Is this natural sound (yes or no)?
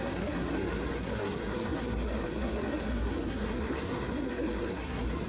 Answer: no